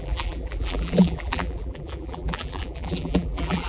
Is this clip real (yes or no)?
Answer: no